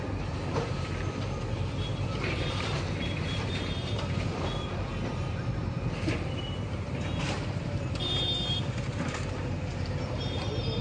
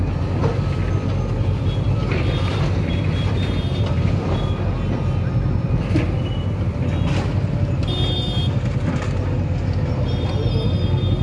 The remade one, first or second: first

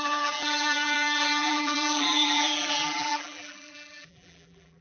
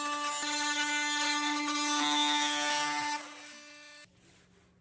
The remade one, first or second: first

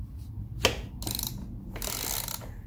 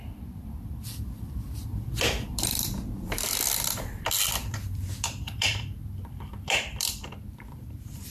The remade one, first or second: second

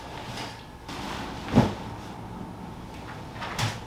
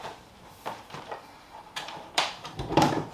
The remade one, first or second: second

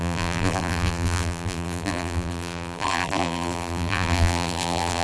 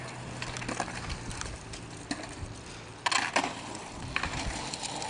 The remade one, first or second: first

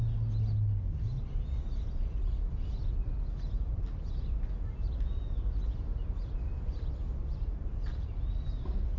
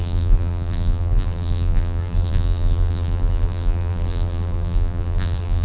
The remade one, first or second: second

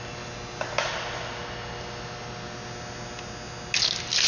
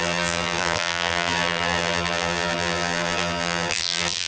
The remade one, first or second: second